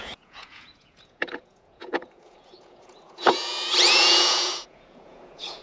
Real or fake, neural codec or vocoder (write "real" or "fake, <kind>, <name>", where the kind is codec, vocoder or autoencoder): fake, vocoder, Vocos